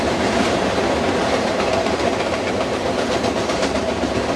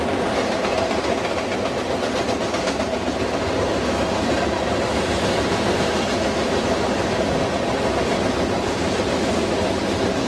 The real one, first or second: second